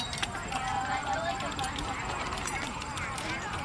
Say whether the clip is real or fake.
fake